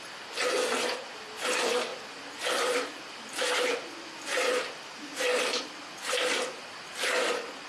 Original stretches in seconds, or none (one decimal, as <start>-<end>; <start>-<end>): 0.0-7.7